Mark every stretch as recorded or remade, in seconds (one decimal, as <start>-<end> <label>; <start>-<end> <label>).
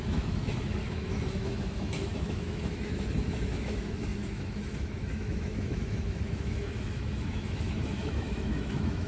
0.0-9.1 remade